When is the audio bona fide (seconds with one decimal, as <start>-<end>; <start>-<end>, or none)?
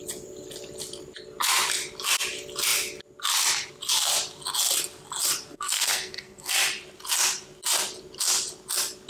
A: 0.0-5.5; 6.5-9.1